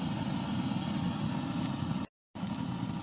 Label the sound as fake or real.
real